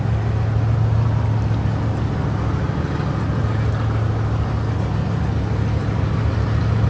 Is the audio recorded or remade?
recorded